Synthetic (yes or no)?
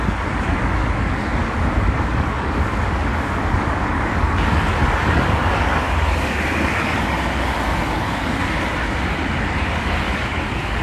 yes